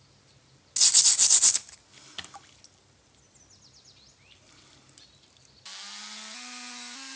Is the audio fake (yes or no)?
no